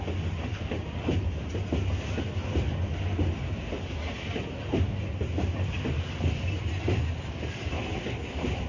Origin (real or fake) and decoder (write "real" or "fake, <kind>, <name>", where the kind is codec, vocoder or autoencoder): real